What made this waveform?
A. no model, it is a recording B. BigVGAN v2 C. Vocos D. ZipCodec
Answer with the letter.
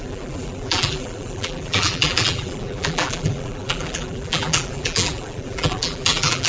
B